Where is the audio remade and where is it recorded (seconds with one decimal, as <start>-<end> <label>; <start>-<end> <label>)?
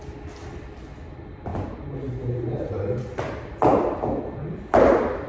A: 0.0-5.3 recorded